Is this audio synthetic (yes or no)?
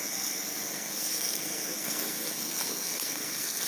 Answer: yes